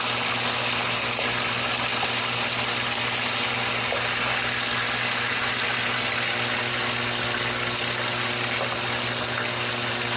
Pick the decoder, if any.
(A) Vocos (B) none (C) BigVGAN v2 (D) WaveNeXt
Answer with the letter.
B